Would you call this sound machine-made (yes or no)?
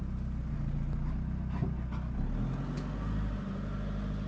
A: no